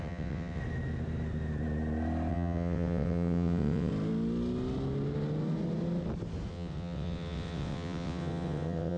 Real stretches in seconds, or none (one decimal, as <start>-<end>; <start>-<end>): 0.6-2.3; 3.9-6.5